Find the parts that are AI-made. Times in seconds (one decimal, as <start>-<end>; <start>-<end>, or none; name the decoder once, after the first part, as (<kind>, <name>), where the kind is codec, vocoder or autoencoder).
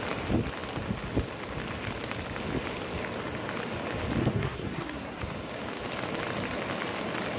4.2-5.2 (codec, SNAC)